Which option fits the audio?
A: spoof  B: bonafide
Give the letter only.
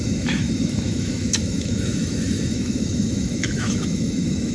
A